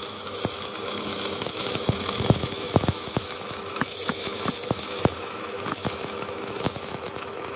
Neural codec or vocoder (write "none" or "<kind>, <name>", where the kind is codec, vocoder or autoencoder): autoencoder, DAC-VAE